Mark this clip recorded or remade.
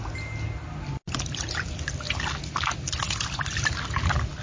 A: recorded